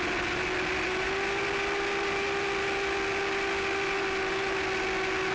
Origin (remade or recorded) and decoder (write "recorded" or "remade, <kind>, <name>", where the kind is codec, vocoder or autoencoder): recorded